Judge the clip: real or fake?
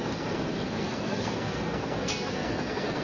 fake